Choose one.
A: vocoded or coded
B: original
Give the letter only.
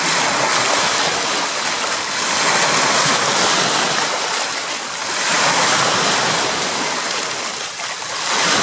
B